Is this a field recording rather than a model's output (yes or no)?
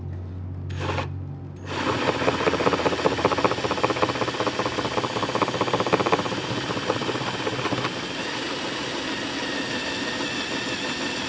yes